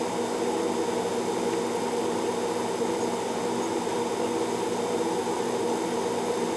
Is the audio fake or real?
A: real